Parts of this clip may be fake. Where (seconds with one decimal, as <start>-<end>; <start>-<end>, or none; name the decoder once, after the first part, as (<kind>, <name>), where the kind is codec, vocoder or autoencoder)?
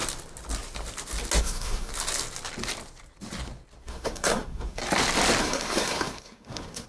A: 1.4-1.9 (codec, SNAC); 3.8-4.8; 5.4-6.9